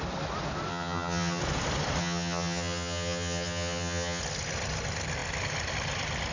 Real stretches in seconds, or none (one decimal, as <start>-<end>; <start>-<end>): 0.0-0.7; 1.4-2.0; 4.2-6.3